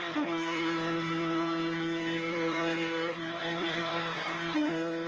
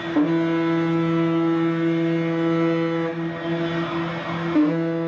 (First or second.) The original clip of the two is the second